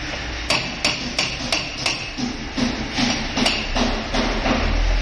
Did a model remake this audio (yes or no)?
no